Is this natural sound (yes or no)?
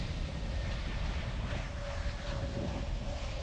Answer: yes